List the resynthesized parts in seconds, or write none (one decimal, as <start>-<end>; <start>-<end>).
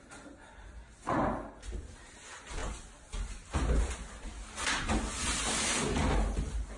none